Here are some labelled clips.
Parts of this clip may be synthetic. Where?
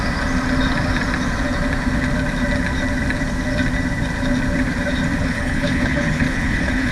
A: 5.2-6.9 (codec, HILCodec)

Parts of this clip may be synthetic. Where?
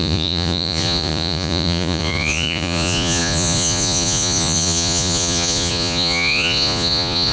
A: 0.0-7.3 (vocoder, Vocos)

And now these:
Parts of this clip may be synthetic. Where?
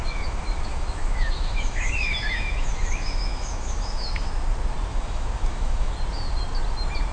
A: 0.0-4.3 (autoencoder, DAC-VAE); 4.9-5.9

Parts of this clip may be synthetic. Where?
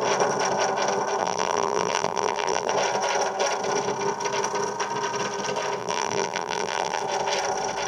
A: 1.2-2.7 (vocoder, BigVGAN v2); 5.8-7.0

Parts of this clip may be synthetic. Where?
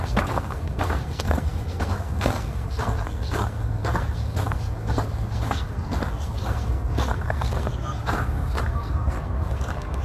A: 0.0-10.0 (codec, SNAC)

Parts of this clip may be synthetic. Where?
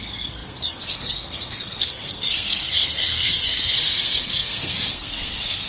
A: 0.0-5.7 (codec, SNAC)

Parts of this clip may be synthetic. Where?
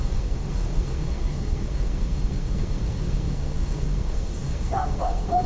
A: 0.0-5.5 (codec, SNAC)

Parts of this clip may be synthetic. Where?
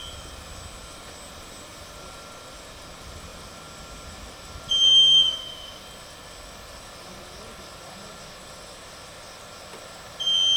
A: 4.9-5.8 (autoencoder, DAC-VAE)